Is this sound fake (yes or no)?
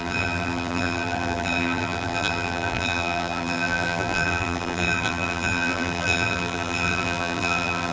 yes